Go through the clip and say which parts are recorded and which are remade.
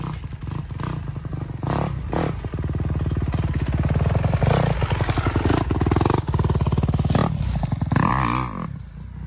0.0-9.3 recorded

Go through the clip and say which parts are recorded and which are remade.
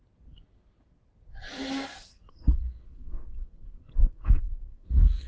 0.0-1.9 recorded; 1.9-5.3 remade